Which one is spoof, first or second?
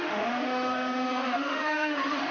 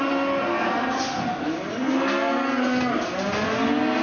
first